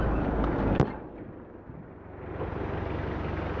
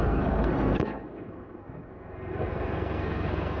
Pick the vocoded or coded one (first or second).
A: second